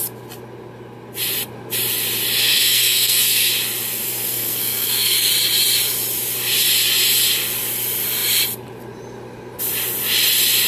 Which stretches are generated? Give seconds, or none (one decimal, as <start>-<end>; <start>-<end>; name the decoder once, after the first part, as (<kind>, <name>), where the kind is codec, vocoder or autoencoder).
2.4-3.5 (codec, SNAC); 3.9-5.3